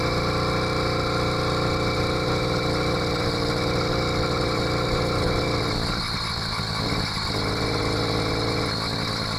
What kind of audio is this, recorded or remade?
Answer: recorded